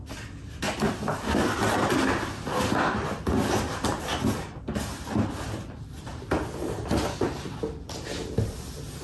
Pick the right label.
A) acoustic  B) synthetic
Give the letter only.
A